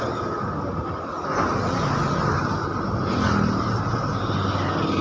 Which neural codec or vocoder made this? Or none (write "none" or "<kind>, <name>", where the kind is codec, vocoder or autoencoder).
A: none